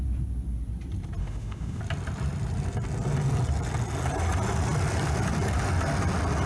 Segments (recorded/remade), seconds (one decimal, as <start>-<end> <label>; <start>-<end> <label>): 0.0-1.2 recorded; 1.2-1.8 remade; 1.8-6.5 recorded